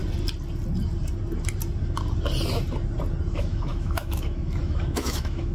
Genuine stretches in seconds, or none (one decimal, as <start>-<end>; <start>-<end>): 0.0-3.3

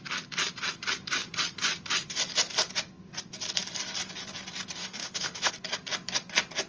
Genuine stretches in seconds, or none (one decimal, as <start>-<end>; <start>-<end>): 0.0-4.8; 5.5-6.7

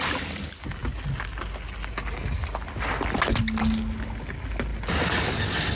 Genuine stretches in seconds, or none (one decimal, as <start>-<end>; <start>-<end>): 0.0-5.8

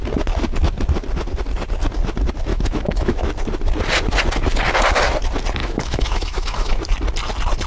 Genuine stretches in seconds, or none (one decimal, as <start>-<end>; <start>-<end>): 0.0-2.5; 3.2-5.6; 6.8-7.7